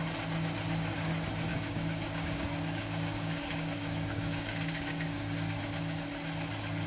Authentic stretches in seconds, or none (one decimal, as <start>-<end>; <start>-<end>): 0.0-1.5; 5.6-6.9